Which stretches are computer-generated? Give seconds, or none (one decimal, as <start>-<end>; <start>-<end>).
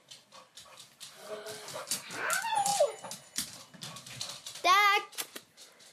none